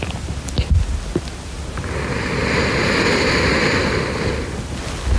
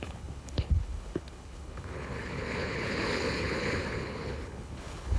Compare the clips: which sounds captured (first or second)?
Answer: first